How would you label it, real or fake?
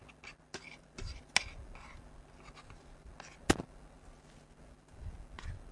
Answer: real